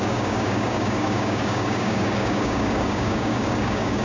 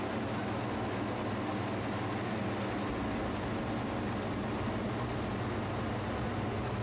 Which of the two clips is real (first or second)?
second